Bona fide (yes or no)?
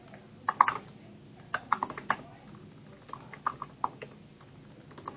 yes